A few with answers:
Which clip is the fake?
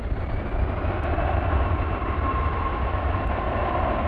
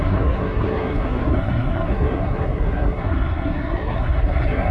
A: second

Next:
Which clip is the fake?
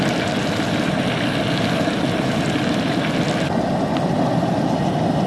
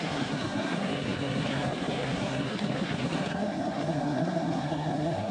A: second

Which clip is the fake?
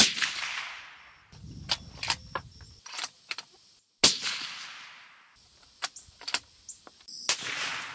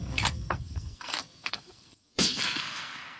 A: second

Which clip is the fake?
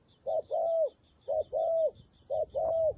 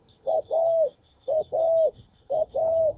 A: second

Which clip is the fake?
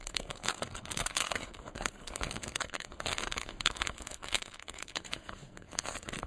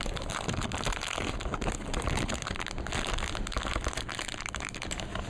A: first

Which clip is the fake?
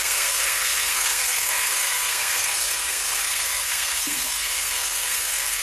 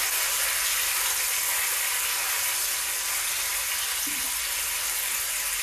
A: first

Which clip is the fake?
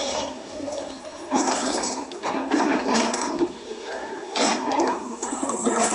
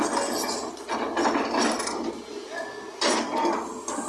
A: first